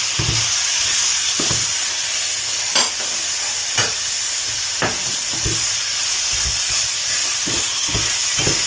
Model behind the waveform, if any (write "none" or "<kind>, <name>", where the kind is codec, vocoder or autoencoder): none